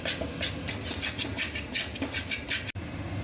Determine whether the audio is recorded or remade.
recorded